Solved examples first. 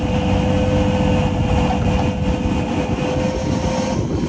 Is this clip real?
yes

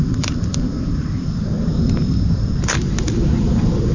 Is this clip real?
yes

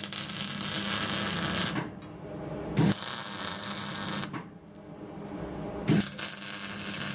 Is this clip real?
yes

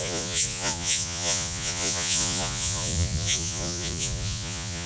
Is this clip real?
no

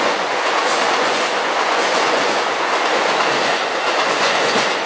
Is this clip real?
no